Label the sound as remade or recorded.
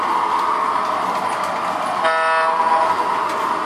recorded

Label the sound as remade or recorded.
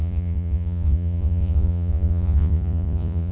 remade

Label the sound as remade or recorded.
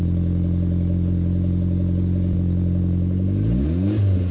recorded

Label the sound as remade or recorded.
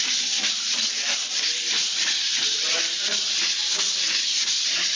remade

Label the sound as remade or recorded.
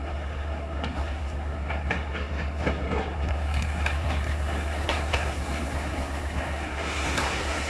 remade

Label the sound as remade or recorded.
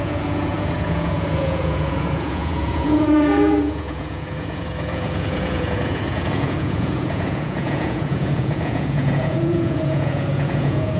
remade